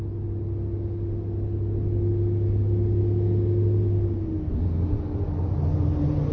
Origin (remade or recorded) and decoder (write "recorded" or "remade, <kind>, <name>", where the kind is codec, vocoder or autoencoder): recorded